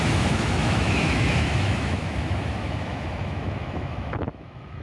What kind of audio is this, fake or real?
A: fake